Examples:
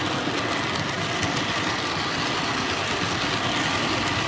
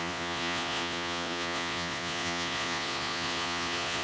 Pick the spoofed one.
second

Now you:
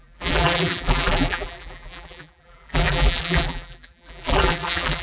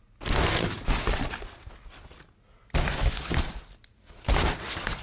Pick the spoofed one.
first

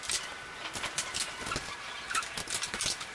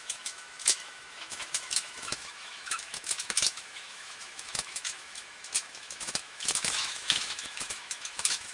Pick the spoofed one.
second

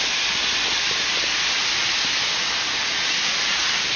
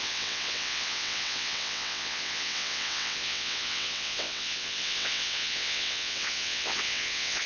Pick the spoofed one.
second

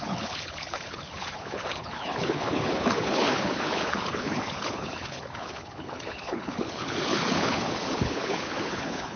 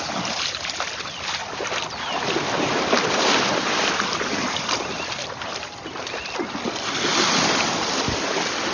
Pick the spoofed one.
first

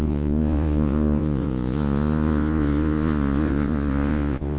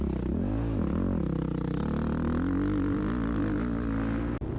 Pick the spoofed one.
first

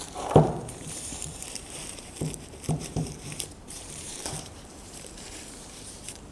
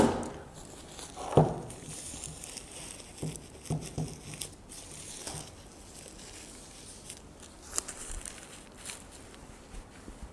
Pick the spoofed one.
first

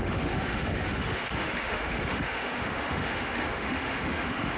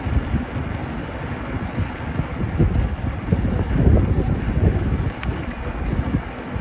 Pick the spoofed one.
first